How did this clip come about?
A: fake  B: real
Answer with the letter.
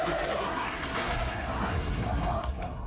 A